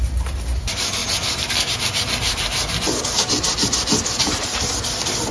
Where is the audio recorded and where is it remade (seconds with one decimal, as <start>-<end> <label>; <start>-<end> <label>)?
0.0-5.3 recorded